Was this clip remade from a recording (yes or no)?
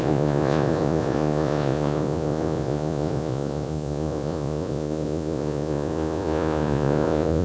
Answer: yes